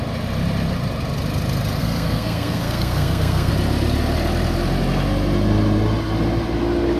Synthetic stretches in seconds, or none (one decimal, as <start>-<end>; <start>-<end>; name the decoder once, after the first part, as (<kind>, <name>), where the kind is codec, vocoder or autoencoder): 1.8-3.5 (codec, SNAC)

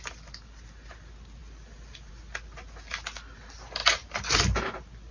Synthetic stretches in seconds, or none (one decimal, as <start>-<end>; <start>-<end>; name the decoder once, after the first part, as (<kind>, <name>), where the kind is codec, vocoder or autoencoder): none

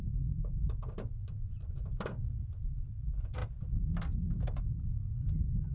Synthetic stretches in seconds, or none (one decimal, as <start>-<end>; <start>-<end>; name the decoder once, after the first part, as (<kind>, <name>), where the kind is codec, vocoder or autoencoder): 1.2-2.6 (vocoder, BigVGAN v2)

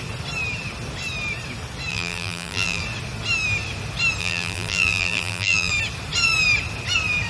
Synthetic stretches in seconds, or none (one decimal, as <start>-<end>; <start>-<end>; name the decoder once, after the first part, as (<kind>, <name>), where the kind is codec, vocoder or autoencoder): 1.9-2.8 (vocoder, BigVGAN v2); 4.2-5.7

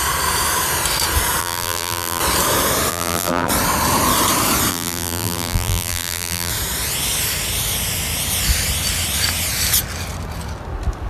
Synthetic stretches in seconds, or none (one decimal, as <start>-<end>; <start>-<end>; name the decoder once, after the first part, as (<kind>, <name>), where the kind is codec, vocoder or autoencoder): 1.4-2.2 (vocoder, BigVGAN v2); 2.9-3.5; 4.7-6.5

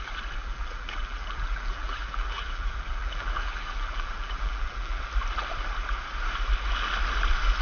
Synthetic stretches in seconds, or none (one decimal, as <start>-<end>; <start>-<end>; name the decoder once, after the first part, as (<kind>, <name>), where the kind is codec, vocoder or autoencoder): 0.4-5.0 (vocoder, BigVGAN v2)

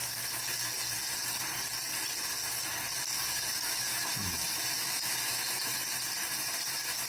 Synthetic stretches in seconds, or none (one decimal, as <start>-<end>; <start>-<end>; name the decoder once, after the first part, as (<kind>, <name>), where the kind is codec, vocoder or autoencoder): 3.1-5.8 (autoencoder, DAC-VAE)

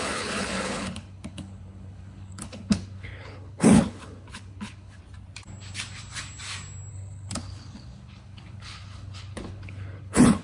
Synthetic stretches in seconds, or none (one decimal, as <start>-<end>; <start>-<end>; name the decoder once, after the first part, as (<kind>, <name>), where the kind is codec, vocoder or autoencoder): 0.0-5.0 (codec, HILCodec); 6.9-10.4